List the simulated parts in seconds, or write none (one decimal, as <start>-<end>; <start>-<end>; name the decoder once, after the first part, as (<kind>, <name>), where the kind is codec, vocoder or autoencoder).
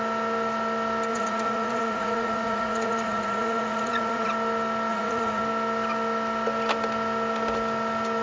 1.1-4.3 (vocoder, Vocos); 4.9-5.4